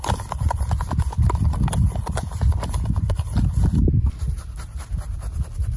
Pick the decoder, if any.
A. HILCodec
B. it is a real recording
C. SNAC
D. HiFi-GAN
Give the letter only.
B